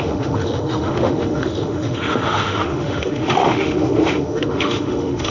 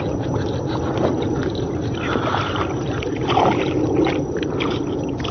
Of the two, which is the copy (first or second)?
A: first